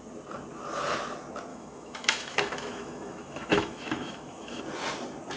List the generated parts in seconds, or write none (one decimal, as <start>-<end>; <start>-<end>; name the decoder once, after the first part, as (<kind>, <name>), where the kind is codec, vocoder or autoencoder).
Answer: 1.5-4.6 (autoencoder, DAC-VAE)